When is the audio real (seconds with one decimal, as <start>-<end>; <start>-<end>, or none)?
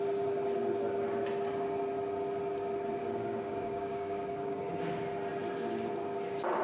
0.0-3.0; 4.7-6.6